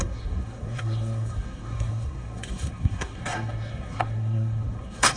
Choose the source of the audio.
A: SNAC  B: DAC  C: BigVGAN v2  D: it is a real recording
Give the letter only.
A